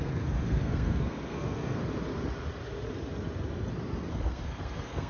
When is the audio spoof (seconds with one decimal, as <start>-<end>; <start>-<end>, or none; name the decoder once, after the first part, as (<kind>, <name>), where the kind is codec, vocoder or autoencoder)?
0.0-1.8 (codec, SNAC); 4.1-5.1